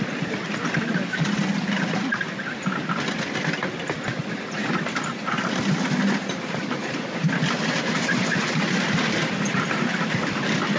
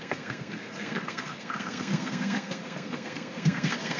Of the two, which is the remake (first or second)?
second